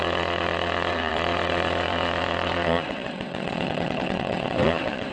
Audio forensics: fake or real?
fake